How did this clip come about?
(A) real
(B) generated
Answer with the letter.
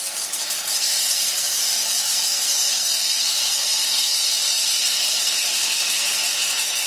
B